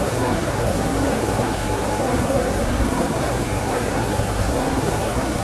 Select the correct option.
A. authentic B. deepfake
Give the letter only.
B